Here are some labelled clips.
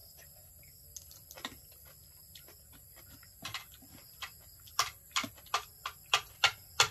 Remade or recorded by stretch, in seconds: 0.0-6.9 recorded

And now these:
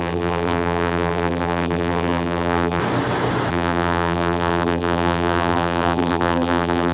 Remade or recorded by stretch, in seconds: 0.0-2.8 remade; 2.8-3.5 recorded; 3.5-6.9 remade